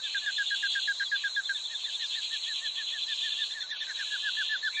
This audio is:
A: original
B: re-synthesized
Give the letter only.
A